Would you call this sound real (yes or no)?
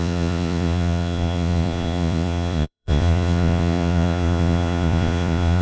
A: no